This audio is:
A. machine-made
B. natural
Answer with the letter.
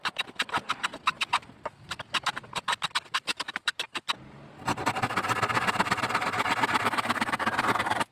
B